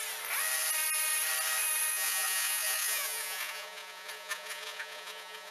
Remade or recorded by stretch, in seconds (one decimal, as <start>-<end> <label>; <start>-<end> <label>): 0.0-1.9 recorded; 1.9-5.5 remade